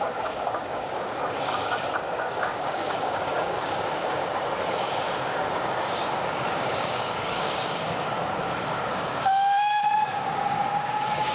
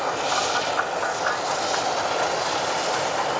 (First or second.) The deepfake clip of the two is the first